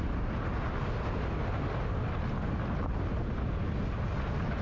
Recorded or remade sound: recorded